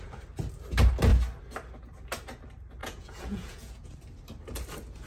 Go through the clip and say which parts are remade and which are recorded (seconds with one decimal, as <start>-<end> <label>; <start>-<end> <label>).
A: 0.0-2.8 recorded; 2.8-3.9 remade; 3.9-5.1 recorded